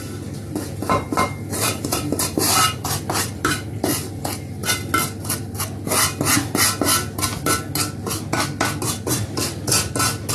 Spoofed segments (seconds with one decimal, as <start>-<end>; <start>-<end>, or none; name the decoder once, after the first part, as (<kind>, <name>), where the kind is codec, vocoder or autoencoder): 1.7-3.5 (vocoder, BigVGAN v2)